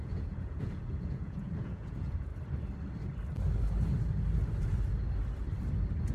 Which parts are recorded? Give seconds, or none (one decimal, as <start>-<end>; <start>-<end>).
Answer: 2.3-6.1